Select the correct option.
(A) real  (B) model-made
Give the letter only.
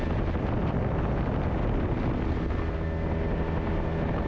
A